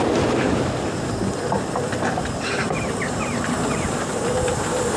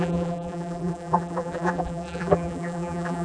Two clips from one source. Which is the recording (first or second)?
first